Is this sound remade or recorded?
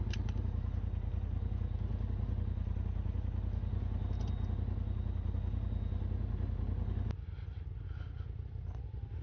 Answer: recorded